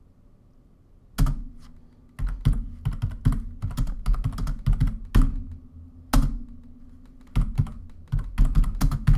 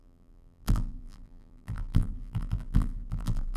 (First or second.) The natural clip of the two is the first